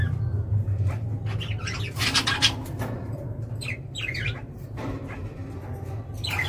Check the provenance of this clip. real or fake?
real